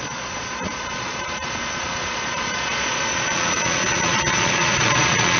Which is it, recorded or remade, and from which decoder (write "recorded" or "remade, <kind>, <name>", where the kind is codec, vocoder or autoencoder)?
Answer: remade, vocoder, Vocos